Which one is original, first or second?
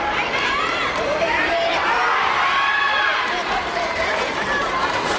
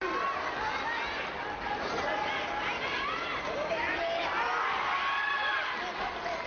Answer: second